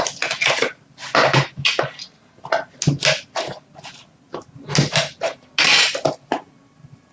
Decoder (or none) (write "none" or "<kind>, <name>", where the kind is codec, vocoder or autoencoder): none